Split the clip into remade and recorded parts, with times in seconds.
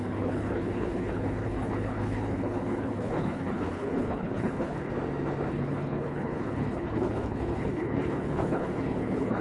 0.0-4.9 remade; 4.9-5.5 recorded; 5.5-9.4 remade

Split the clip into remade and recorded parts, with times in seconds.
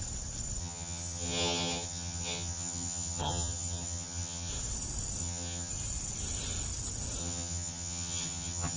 0.0-0.6 recorded; 0.6-4.5 remade; 4.5-5.2 recorded; 5.2-5.7 remade; 5.7-7.2 recorded; 7.2-8.8 remade